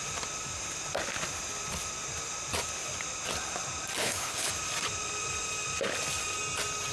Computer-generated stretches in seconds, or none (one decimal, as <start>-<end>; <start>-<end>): 4.0-4.5